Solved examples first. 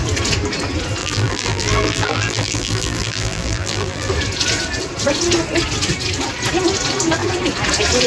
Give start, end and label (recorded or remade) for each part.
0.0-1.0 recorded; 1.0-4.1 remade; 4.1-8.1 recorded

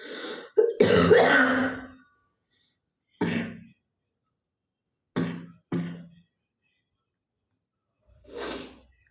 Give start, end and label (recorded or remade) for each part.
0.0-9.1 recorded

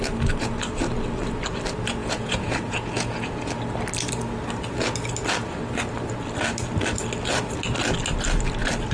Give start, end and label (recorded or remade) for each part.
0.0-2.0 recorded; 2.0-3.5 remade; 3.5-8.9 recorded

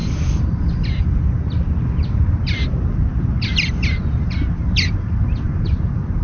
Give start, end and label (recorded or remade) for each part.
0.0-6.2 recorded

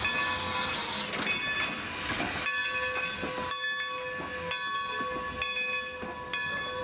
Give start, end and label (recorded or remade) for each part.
0.0-6.8 recorded